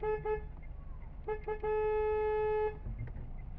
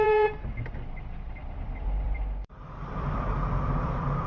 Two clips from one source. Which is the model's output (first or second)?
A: second